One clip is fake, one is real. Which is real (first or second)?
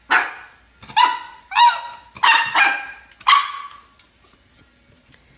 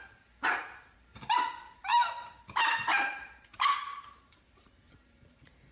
first